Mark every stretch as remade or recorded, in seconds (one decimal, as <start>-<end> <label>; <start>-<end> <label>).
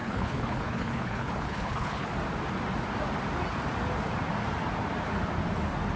0.0-2.1 remade; 2.1-6.0 recorded